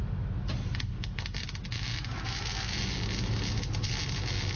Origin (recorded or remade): recorded